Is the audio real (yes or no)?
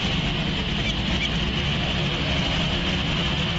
yes